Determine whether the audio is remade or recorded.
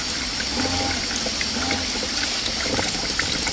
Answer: recorded